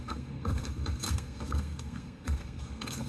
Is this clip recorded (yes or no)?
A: no